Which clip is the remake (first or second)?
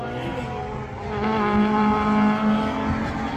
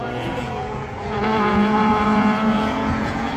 second